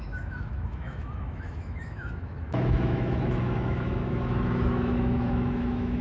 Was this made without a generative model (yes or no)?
no